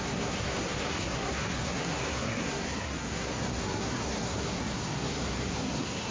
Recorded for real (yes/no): no